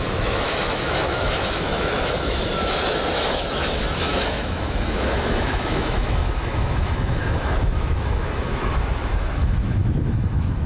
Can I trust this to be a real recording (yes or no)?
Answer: no